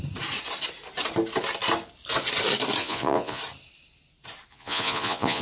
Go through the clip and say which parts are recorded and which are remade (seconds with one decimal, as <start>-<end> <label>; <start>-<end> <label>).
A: 0.0-2.8 recorded; 2.8-3.4 remade; 3.4-4.5 recorded; 4.5-5.4 remade